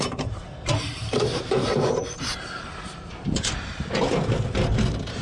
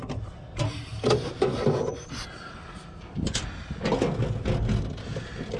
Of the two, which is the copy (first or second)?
first